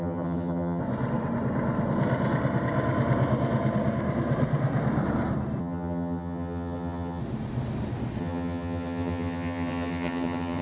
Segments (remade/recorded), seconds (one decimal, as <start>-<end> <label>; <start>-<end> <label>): 0.0-0.8 remade; 0.8-5.6 recorded; 5.6-7.2 remade; 7.2-8.2 recorded; 8.2-10.6 remade